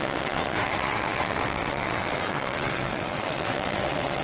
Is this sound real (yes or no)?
no